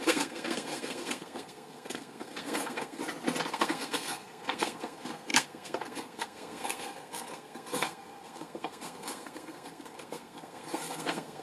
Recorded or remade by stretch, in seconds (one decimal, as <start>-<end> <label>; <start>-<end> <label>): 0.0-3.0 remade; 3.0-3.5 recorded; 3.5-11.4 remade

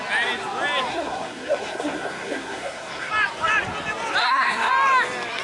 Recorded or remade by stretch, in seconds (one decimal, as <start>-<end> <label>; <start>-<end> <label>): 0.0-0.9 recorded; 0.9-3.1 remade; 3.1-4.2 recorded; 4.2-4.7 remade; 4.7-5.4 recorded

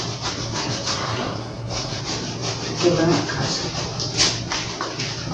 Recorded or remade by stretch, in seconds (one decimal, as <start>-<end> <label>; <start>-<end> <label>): 0.0-0.4 recorded; 0.4-2.0 remade; 2.0-5.3 recorded

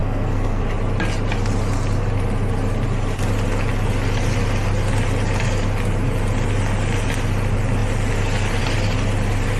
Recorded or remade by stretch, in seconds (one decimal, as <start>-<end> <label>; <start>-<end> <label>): 0.0-0.6 remade; 0.6-9.6 recorded

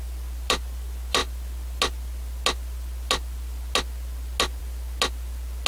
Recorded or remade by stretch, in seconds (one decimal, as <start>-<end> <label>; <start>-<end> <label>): 0.0-5.7 recorded